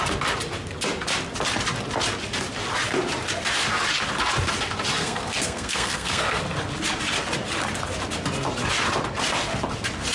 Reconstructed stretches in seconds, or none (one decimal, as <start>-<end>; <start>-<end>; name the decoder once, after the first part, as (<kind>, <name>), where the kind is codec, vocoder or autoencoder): 5.0-6.4 (codec, SNAC)